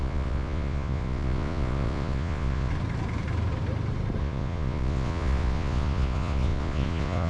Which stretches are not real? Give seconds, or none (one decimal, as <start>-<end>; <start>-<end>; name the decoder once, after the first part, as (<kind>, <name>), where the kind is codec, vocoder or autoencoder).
0.0-2.7 (vocoder, Vocos); 4.2-7.3

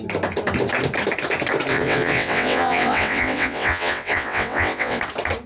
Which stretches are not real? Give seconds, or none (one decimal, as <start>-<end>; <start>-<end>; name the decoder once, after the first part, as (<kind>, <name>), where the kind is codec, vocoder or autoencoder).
1.7-5.0 (vocoder, WaveNeXt)

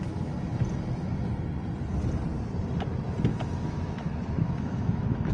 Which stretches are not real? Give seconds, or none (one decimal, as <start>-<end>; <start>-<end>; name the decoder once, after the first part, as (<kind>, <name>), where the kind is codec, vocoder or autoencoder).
3.3-5.3 (autoencoder, DAC-VAE)

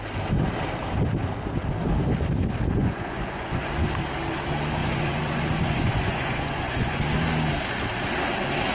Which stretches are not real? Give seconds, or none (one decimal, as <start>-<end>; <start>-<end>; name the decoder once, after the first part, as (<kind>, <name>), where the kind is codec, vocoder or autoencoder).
2.8-3.6 (vocoder, Vocos); 4.8-7.0

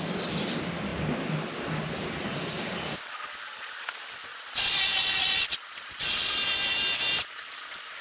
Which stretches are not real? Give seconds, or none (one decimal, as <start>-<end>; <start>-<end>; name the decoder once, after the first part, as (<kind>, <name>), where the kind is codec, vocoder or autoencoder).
4.3-6.3 (vocoder, Vocos)